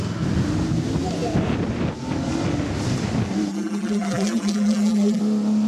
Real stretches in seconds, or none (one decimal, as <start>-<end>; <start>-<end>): 0.0-3.5; 5.2-5.7

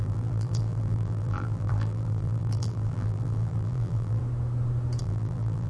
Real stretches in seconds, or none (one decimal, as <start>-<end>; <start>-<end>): 4.2-5.0